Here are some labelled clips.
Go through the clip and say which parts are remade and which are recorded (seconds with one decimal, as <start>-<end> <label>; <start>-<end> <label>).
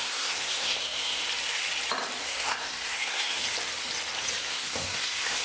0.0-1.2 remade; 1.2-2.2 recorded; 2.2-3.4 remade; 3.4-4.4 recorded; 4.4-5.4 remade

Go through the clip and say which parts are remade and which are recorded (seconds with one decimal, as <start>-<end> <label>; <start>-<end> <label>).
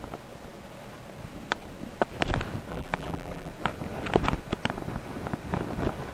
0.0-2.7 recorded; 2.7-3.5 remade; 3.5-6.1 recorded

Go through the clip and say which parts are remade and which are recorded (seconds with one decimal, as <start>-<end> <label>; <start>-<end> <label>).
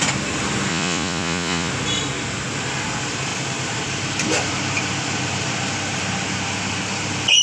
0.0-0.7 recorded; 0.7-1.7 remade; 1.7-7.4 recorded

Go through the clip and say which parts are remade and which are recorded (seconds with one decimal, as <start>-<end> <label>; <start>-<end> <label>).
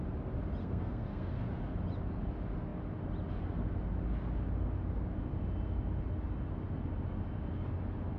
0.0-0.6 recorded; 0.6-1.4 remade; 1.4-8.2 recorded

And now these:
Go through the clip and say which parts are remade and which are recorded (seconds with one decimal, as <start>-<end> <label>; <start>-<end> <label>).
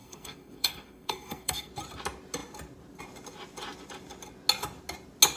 0.0-1.7 remade; 1.7-5.4 recorded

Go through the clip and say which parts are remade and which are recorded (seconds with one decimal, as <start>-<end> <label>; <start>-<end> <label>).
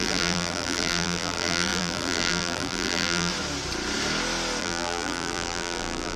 0.0-3.3 remade; 3.3-4.6 recorded; 4.6-6.2 remade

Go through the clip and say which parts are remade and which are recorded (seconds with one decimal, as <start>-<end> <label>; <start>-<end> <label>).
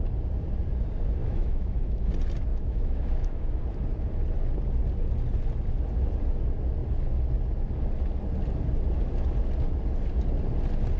0.0-1.2 recorded; 1.2-2.1 remade; 2.1-2.5 recorded; 2.5-3.6 remade; 3.6-11.0 recorded